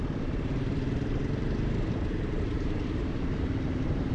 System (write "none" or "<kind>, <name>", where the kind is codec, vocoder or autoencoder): vocoder, BigVGAN v2